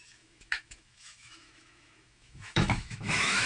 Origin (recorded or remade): remade